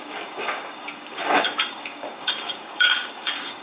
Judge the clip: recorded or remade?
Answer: remade